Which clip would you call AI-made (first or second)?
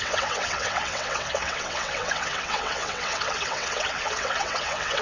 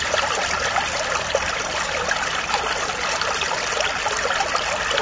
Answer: first